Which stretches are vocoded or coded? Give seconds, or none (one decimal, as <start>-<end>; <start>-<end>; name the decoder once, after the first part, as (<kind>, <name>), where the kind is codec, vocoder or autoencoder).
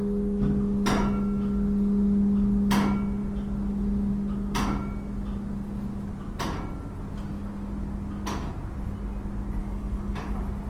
9.6-10.2 (codec, DAC)